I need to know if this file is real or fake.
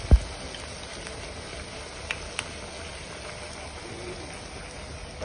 real